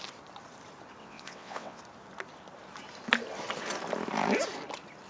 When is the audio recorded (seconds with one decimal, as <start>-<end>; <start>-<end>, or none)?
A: 0.0-1.0; 1.8-5.1

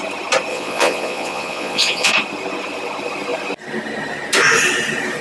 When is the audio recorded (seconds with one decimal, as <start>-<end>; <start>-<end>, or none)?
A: 0.0-0.5; 2.1-5.2

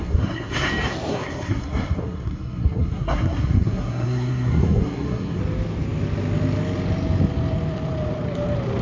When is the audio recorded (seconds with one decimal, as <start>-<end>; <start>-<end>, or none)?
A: 0.7-1.1; 5.4-8.8

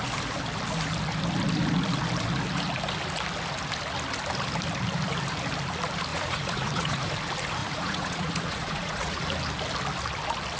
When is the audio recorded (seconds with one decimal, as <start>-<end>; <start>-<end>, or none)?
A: 0.0-6.1; 7.1-7.6; 9.2-10.6

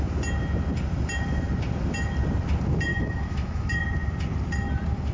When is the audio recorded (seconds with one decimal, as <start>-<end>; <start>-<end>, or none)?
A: 0.0-2.9; 3.8-5.1